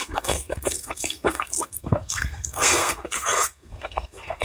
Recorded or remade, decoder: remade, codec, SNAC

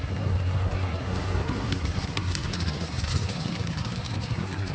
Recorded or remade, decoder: remade, codec, SNAC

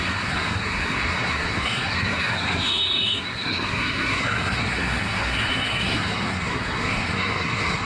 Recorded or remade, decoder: remade, codec, SNAC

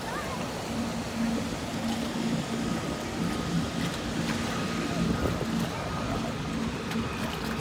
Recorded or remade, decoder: recorded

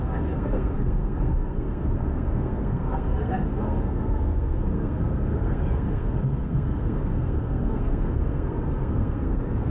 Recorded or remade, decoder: remade, codec, SNAC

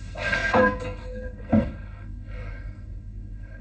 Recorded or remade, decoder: remade, codec, SNAC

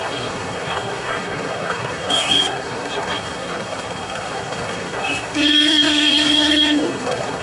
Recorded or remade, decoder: remade, codec, SNAC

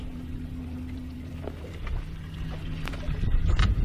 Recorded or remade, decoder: recorded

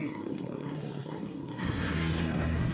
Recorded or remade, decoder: remade, codec, SNAC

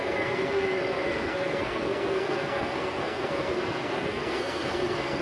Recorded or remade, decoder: remade, codec, SNAC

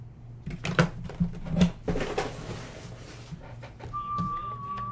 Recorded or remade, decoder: recorded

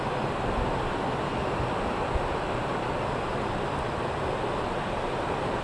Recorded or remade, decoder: recorded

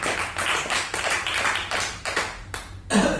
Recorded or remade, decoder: recorded